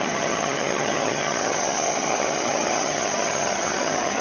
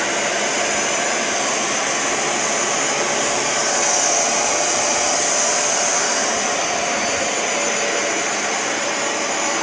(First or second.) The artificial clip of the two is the first